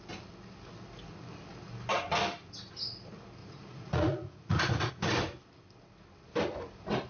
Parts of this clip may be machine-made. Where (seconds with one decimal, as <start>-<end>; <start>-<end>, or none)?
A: 3.4-4.9